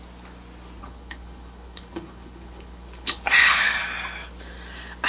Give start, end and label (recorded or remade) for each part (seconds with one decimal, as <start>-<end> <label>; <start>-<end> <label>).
0.0-0.8 recorded; 0.8-3.8 remade; 3.8-5.1 recorded